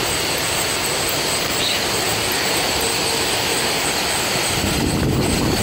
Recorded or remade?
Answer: recorded